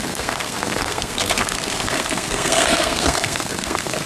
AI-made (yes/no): yes